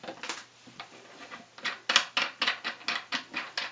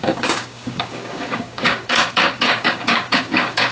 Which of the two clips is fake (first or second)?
second